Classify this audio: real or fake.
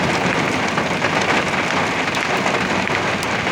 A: real